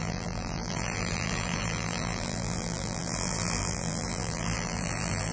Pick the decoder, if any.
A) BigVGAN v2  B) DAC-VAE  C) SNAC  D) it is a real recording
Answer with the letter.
A